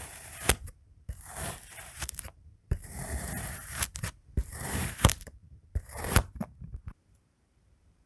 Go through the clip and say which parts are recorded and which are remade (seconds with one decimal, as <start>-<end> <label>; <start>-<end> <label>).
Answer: 0.0-8.1 remade